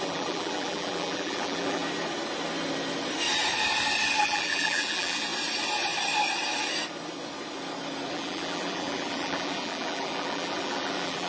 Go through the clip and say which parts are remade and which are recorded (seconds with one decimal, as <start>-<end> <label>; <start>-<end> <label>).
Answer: 0.0-1.8 remade; 1.8-4.2 recorded; 4.2-5.3 remade; 5.3-8.1 recorded; 8.1-11.3 remade